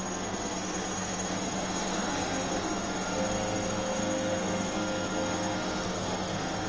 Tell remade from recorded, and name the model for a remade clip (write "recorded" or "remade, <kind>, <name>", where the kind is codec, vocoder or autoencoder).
remade, codec, SNAC